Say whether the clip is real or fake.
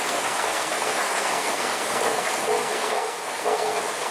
fake